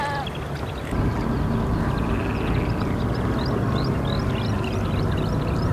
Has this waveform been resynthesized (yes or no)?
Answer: no